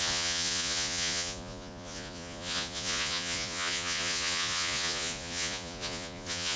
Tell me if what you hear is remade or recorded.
remade